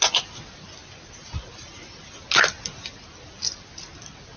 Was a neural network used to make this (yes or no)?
no